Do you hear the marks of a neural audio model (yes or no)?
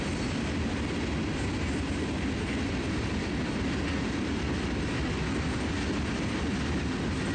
no